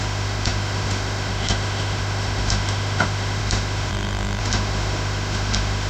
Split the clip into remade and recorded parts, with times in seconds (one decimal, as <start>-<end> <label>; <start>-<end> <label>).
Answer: 0.0-3.9 remade; 3.9-4.4 recorded; 4.4-5.9 remade

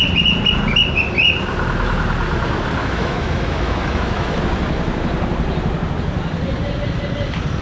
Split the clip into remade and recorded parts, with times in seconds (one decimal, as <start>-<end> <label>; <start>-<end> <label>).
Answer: 0.0-2.8 recorded; 2.8-4.4 remade; 4.4-7.6 recorded